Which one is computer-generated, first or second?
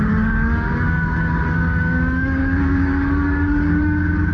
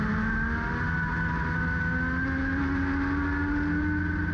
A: first